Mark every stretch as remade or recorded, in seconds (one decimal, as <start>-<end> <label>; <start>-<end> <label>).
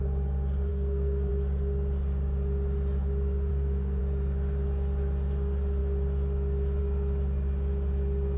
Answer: 0.0-0.7 recorded; 0.7-1.3 remade; 1.3-3.5 recorded; 3.5-4.0 remade; 4.0-8.4 recorded